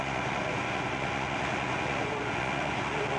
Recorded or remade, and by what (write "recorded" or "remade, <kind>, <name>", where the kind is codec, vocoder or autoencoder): remade, vocoder, Vocos